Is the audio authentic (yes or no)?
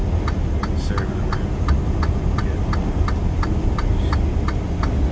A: yes